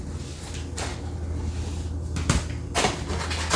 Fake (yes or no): no